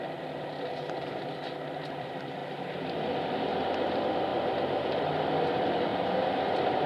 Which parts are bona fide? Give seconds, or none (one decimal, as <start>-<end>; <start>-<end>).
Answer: 2.4-3.0; 5.9-6.5